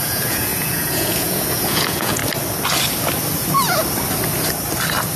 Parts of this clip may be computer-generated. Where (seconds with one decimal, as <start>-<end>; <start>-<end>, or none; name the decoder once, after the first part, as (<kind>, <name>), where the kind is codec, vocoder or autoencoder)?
0.0-2.2 (vocoder, Vocos)